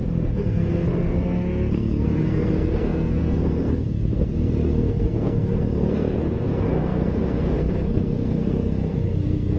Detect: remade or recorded remade